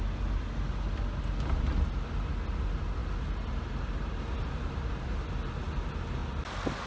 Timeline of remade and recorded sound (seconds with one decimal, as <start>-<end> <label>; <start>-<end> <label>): 0.0-6.9 recorded